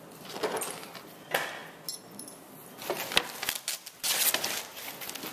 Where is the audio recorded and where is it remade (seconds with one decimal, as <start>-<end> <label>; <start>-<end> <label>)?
0.0-5.3 recorded